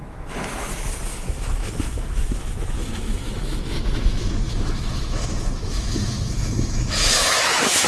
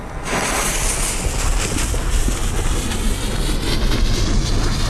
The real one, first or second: second